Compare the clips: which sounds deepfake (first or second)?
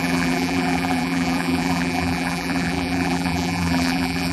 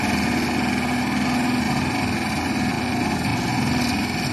first